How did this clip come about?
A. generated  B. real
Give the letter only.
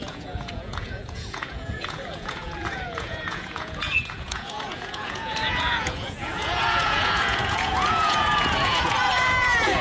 A